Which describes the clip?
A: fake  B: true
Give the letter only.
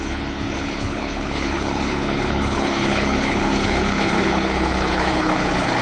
A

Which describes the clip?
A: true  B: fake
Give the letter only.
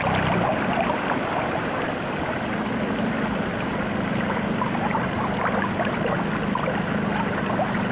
A